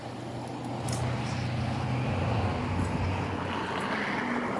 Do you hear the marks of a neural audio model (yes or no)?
no